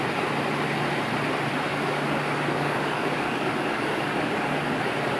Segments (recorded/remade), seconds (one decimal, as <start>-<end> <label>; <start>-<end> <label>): 0.0-1.7 recorded; 1.7-4.8 remade; 4.8-5.2 recorded